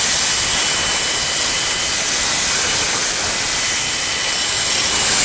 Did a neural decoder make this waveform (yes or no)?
no